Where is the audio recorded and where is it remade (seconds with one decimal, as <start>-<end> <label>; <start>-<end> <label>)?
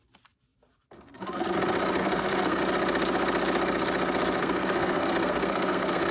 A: 0.0-2.0 recorded; 2.0-2.6 remade; 2.6-4.4 recorded; 4.4-6.1 remade